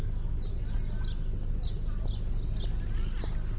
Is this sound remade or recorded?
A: recorded